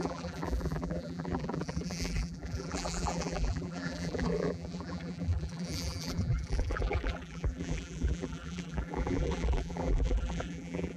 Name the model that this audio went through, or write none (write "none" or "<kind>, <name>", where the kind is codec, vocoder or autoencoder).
vocoder, BigVGAN v2